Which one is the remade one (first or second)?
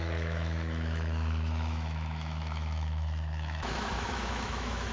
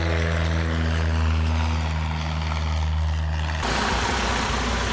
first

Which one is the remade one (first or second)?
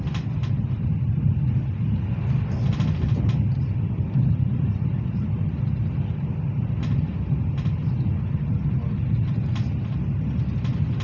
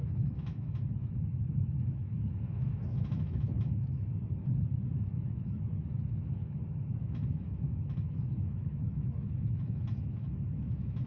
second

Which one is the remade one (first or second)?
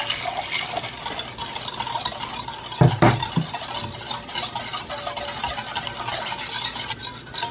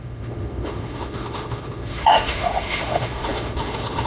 second